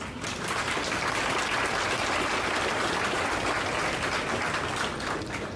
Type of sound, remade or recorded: recorded